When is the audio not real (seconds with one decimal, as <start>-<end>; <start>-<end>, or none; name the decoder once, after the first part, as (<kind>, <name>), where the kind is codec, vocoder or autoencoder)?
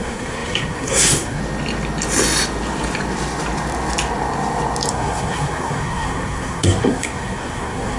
0.0-1.4 (codec, SNAC); 4.9-8.0